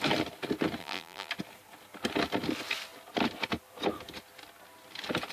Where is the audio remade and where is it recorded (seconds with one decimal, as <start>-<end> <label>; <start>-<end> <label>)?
0.0-0.8 recorded; 0.8-1.3 remade; 1.3-5.3 recorded